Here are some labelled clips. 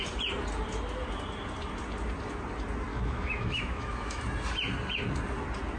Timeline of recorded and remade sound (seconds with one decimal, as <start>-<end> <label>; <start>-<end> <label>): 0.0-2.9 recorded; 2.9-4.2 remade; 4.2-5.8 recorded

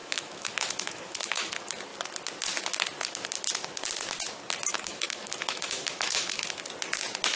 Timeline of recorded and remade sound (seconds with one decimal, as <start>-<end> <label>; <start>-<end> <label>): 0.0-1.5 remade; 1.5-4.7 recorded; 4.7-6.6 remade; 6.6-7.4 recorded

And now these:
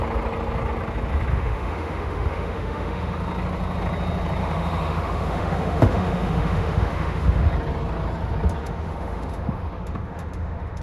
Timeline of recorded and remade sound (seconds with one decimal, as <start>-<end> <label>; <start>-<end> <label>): 0.0-1.3 recorded; 1.3-3.2 remade; 3.2-4.4 recorded; 4.4-7.5 remade; 7.5-8.6 recorded; 8.6-10.8 remade

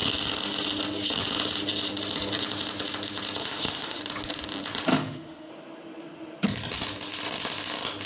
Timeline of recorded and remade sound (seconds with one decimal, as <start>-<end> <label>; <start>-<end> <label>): 0.0-3.4 recorded; 3.4-4.0 remade; 4.0-4.9 recorded; 4.9-5.5 remade; 5.5-8.1 recorded